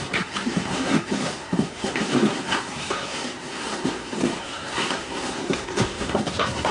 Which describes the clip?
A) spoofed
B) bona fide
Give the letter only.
A